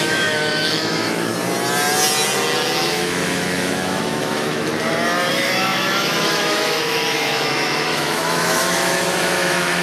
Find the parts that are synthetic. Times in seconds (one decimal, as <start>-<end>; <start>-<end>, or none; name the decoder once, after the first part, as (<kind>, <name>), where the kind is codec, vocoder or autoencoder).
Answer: 0.0-1.3 (autoencoder, DAC-VAE); 2.8-4.7; 5.3-9.8